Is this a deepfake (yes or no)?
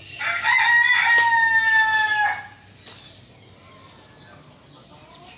no